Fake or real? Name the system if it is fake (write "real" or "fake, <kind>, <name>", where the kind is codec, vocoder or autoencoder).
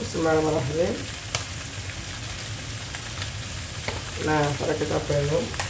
real